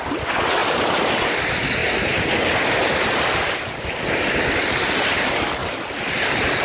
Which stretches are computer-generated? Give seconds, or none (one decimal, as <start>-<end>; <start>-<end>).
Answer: 1.8-2.3; 2.8-4.5